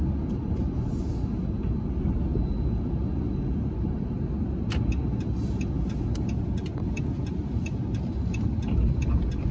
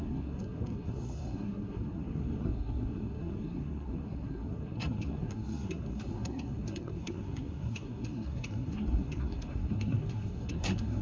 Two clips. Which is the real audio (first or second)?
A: first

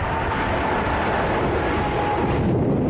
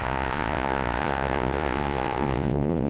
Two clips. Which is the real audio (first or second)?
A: first